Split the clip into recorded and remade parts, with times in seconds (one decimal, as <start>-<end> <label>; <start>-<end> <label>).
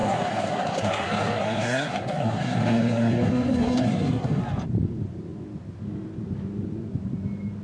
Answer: 0.0-4.4 remade; 4.4-7.6 recorded